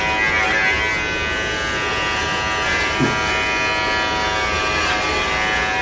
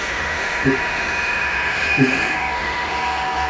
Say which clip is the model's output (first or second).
second